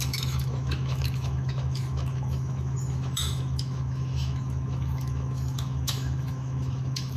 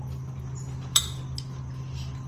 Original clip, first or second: second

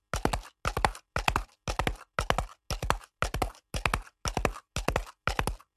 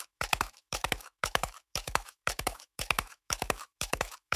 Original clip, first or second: first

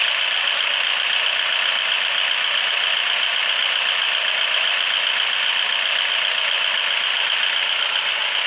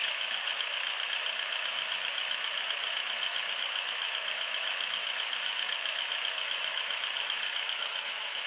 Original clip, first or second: first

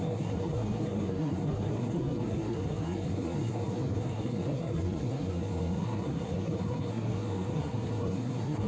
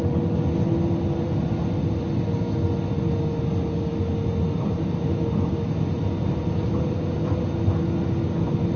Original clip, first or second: second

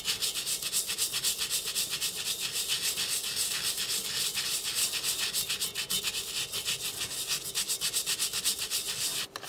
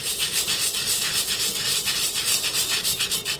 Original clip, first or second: first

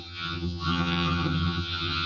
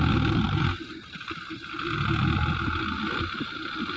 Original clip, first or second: second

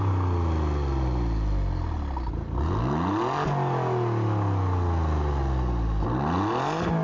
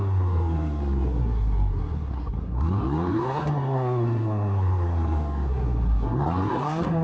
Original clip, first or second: first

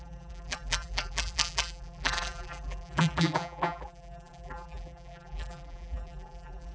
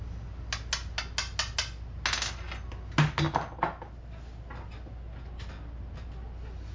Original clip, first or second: second